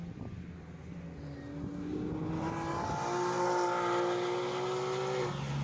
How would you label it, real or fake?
real